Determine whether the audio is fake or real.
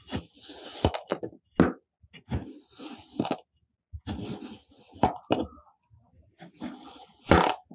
real